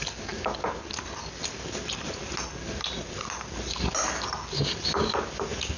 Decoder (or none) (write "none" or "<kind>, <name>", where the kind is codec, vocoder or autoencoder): none